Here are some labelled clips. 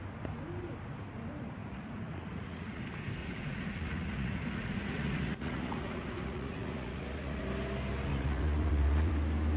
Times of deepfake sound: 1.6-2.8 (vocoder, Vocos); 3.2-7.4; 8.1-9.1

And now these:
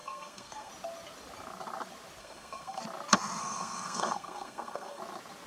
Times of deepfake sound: 0.0-0.7 (codec, SNAC); 2.2-2.8; 3.4-5.0

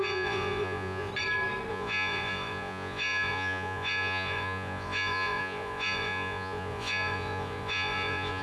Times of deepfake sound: 0.0-1.1 (vocoder, Vocos); 1.7-8.4

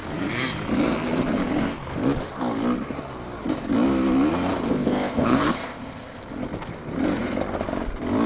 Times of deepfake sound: 4.7-6.2 (codec, ZipCodec)